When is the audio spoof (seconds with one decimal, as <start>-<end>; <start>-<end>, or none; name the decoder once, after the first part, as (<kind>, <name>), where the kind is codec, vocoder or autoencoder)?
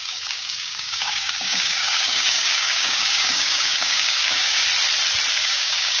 0.0-4.6 (codec, DAC); 5.3-6.0